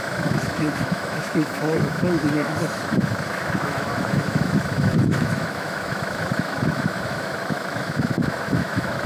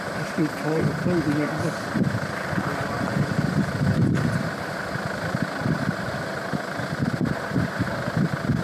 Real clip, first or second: second